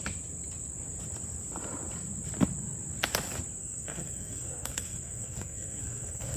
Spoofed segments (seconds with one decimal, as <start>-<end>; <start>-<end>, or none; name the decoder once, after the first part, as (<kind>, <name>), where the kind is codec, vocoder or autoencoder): 3.6-6.4 (codec, SNAC)